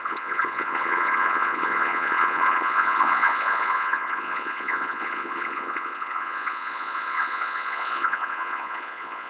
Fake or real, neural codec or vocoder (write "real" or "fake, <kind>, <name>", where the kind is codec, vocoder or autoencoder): fake, vocoder, Vocos